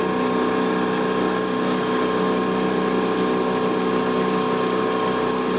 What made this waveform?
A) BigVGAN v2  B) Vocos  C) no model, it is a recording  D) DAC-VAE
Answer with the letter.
C